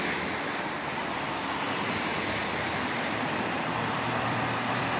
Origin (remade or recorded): remade